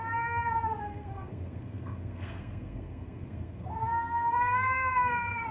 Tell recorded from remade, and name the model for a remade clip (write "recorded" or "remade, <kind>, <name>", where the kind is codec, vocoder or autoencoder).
remade, codec, SNAC